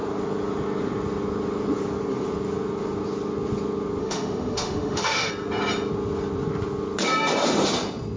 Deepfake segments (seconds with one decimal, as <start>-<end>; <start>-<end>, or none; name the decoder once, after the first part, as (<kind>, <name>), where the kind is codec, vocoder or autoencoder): 4.0-5.3 (autoencoder, DAC-VAE)